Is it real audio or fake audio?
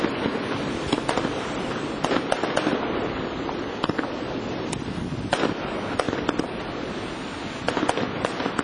real